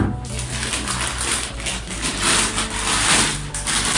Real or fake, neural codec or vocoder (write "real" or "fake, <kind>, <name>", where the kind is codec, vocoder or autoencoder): real